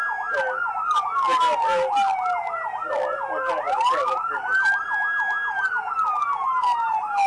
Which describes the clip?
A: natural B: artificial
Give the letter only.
A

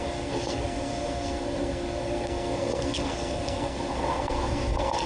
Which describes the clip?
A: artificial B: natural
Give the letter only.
A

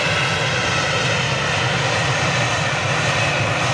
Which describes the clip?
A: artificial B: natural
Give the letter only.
B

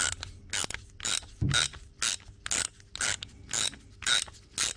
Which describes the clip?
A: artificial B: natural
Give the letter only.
B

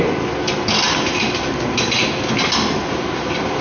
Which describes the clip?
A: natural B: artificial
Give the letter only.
A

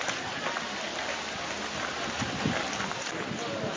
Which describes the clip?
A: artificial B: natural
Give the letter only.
B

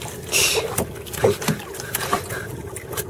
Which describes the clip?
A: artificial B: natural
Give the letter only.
B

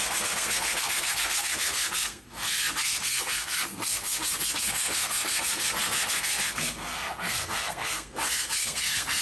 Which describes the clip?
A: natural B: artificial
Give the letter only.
B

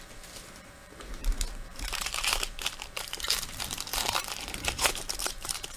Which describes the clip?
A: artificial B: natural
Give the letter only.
A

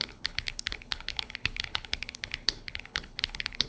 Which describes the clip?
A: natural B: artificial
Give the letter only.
B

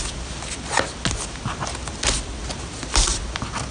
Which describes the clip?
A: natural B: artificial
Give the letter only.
A